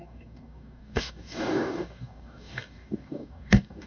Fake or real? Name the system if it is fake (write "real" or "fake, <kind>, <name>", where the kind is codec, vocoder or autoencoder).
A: fake, codec, DAC